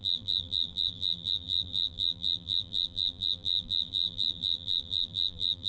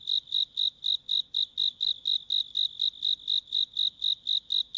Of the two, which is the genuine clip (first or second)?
second